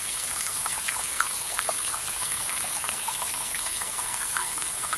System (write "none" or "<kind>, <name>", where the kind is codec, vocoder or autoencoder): codec, SNAC